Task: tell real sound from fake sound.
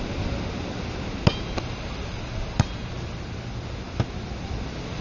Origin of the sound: real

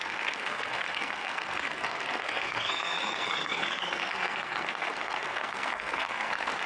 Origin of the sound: fake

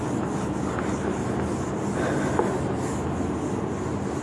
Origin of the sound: real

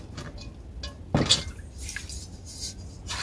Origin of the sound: real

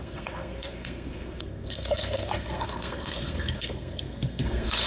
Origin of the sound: fake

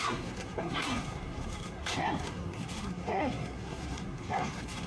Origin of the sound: fake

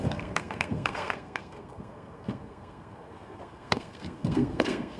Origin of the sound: fake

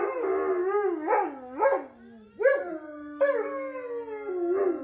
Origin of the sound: real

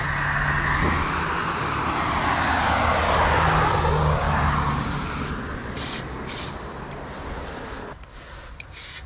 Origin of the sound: real